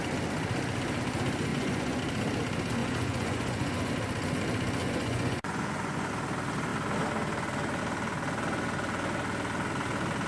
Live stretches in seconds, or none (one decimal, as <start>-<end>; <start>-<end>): 0.0-1.5; 2.0-2.8; 3.9-4.8; 6.1-10.3